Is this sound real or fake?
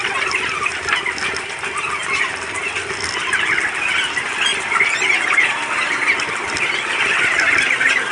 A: real